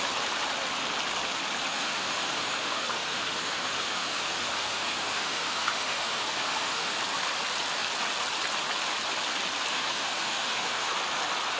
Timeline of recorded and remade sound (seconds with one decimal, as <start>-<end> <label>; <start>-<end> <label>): 0.0-1.7 recorded; 1.7-6.9 remade; 6.9-9.7 recorded; 9.7-10.9 remade; 10.9-11.6 recorded